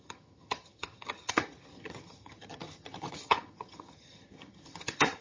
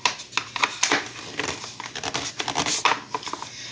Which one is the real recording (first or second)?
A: second